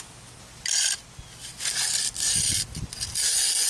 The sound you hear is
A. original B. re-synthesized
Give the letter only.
A